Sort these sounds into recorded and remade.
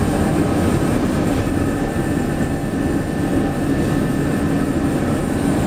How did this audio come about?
recorded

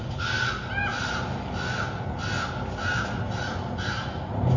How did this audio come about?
recorded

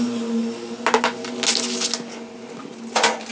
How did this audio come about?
recorded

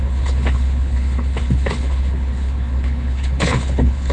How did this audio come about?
remade